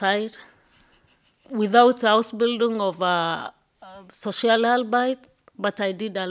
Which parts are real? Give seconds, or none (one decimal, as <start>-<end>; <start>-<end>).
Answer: 0.0-6.3

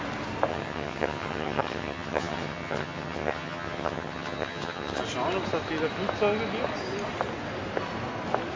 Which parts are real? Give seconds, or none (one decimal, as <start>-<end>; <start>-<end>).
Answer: 0.0-0.5; 5.0-8.6

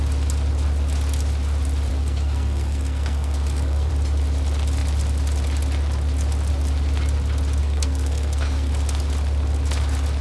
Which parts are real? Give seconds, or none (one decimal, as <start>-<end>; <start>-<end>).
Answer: 0.0-1.9; 3.9-7.6; 8.7-10.2

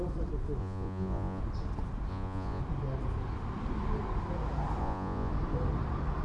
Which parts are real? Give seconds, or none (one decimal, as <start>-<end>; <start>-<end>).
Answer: 0.0-0.6; 1.4-2.1; 2.6-4.8; 5.3-6.2

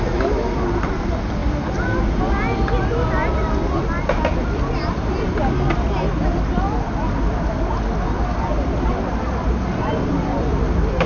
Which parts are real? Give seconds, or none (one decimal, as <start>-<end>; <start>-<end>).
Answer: 0.0-11.1